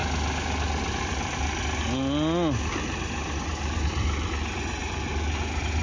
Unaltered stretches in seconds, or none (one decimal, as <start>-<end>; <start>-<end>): 0.0-5.8